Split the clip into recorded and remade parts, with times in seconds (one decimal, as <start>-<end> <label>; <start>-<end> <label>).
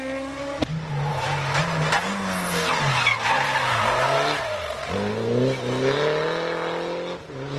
0.0-7.6 recorded